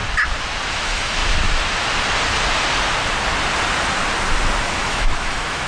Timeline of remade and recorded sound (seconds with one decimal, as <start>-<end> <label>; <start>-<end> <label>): 0.0-0.7 recorded; 0.7-1.2 remade; 1.2-4.6 recorded; 4.6-5.7 remade